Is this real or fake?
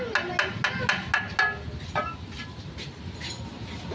real